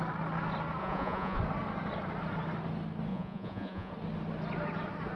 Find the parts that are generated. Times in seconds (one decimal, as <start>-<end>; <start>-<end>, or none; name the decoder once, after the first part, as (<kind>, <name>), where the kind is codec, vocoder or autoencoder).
0.8-1.4 (vocoder, Vocos); 3.1-3.9